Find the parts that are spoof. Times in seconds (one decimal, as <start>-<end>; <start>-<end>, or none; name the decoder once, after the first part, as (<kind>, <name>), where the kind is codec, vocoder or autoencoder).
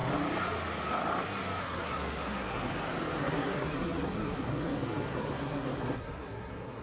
1.6-2.7 (codec, SNAC); 3.2-6.8